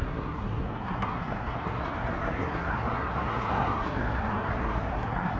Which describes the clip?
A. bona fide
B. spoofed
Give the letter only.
B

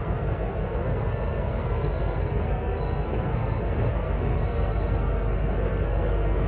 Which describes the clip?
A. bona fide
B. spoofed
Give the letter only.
B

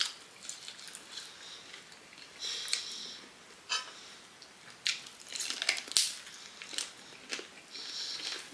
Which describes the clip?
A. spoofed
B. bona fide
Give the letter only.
B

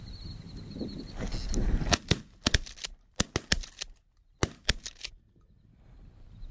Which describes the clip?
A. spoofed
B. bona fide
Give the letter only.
B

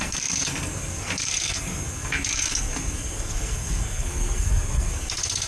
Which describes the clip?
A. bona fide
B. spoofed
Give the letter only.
B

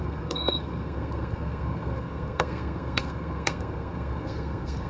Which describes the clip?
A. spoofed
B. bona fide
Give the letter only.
A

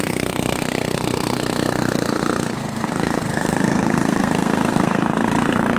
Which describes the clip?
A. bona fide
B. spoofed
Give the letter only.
B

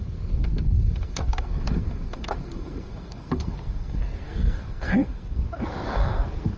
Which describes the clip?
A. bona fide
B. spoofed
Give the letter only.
B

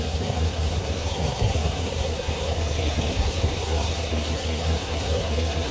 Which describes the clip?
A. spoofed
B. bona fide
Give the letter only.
A